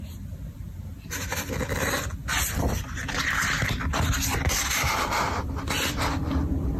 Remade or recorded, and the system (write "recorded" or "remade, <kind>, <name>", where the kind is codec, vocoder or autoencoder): recorded